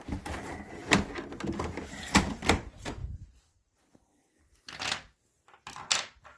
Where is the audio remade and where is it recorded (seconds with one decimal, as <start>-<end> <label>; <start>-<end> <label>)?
0.0-3.0 recorded; 3.0-4.6 remade; 4.6-6.4 recorded